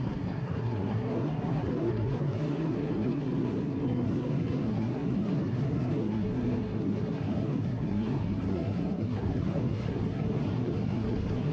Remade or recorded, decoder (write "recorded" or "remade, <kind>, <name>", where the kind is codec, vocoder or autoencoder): remade, codec, SNAC